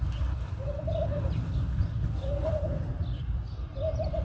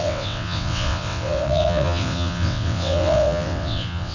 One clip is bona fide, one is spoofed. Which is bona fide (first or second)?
first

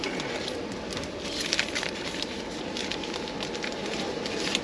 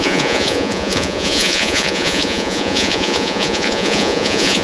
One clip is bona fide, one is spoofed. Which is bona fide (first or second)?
first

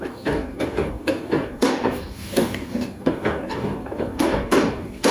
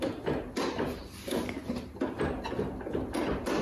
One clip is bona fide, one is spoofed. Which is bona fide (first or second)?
second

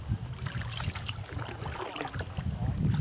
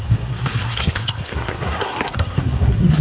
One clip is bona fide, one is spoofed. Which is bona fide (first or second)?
first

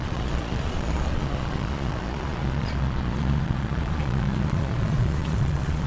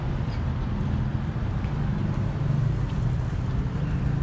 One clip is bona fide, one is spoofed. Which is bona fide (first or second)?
second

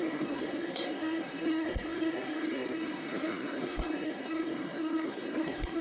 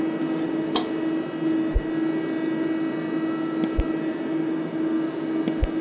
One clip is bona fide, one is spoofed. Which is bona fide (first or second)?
second